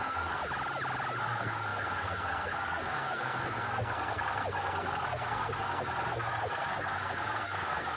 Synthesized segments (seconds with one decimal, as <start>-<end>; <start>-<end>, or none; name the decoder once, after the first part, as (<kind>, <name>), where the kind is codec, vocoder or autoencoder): 0.0-0.4 (codec, SNAC); 1.2-8.0